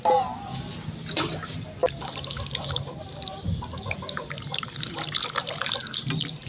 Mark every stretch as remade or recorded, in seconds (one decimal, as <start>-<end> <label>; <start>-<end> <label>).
0.0-6.5 recorded